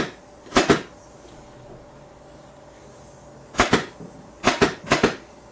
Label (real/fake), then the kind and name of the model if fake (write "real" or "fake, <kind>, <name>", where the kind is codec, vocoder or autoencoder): real